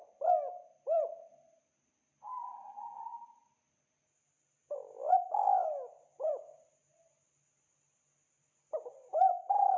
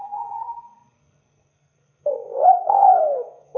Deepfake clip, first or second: second